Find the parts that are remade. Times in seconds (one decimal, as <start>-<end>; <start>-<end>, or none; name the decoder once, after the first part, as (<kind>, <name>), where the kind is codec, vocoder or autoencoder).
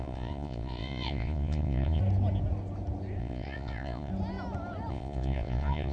0.0-2.0 (vocoder, Vocos); 3.2-4.1; 4.9-5.9